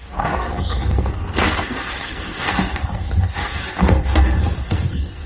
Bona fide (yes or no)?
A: no